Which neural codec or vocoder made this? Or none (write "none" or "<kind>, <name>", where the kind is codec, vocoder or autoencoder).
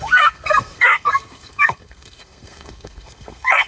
codec, SNAC